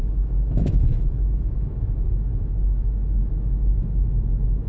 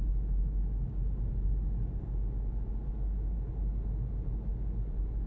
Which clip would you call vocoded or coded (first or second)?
first